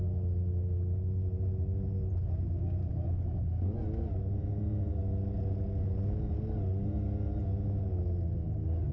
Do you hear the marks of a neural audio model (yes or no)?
no